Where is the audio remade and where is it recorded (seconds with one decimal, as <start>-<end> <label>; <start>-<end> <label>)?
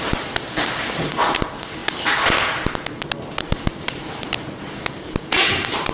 0.0-5.9 recorded